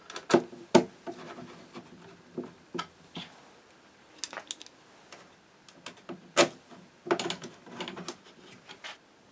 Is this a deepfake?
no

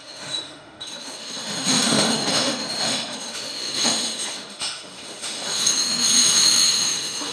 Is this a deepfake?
yes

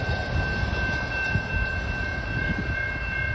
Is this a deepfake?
no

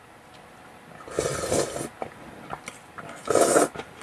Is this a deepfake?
no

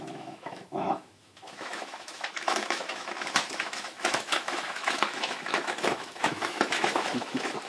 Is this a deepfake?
yes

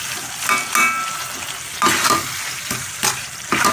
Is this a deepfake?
no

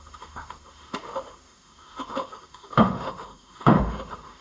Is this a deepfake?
yes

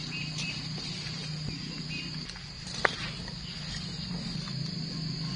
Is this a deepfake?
no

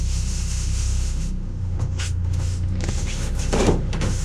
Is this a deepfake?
yes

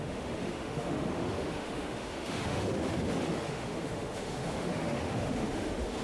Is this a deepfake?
yes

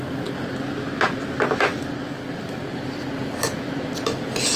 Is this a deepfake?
no